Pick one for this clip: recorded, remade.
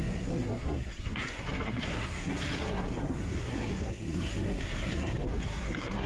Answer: remade